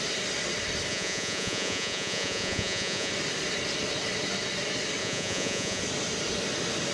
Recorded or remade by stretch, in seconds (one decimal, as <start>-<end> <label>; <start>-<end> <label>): 0.0-0.9 recorded; 0.9-3.1 remade; 3.1-5.0 recorded; 5.0-5.8 remade; 5.8-6.9 recorded